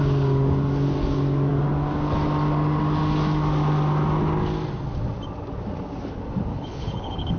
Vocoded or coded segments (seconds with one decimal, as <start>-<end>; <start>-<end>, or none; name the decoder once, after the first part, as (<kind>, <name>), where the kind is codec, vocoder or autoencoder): 6.5-7.4 (codec, HILCodec)